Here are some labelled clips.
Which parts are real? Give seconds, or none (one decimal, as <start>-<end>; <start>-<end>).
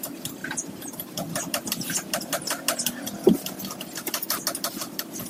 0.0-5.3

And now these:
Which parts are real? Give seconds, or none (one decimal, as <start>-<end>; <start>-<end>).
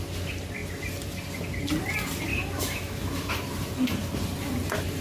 0.0-2.3; 3.3-5.0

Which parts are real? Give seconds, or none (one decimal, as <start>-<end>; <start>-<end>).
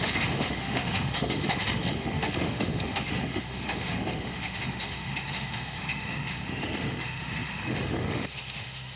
none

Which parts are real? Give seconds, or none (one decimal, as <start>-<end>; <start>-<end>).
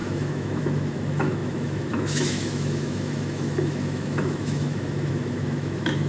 none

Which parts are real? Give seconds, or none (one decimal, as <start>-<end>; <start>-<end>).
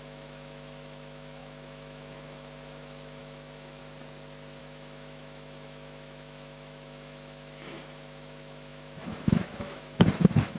3.8-4.6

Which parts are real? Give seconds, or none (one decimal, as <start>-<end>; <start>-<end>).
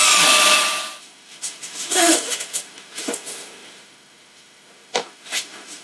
0.0-1.0